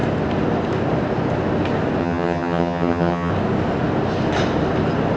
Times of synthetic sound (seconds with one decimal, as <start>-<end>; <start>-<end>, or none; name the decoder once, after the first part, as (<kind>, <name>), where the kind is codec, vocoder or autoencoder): 2.0-3.3 (vocoder, HiFi-GAN)